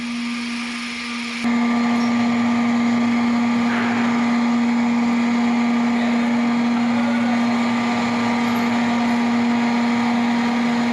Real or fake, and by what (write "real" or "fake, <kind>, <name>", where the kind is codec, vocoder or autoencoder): real